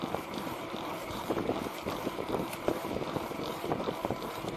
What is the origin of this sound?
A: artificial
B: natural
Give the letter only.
A